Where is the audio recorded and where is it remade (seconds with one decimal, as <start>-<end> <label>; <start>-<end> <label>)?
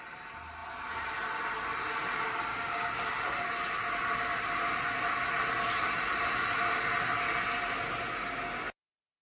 0.0-2.5 recorded; 2.5-3.1 remade; 3.1-9.2 recorded